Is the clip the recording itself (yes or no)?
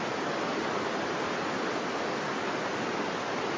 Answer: yes